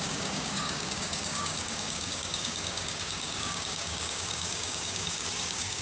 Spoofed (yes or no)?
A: yes